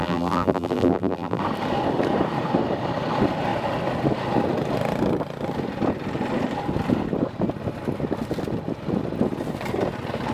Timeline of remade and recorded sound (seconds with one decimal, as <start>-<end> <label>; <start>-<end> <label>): 0.0-1.4 remade; 1.4-10.3 recorded